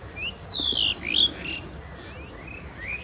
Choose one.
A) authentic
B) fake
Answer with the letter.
A